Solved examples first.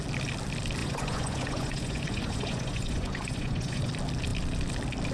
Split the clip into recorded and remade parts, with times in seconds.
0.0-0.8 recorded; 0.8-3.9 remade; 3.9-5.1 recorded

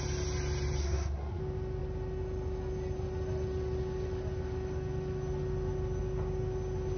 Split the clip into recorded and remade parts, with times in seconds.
0.0-0.8 recorded; 0.8-1.4 remade; 1.4-7.0 recorded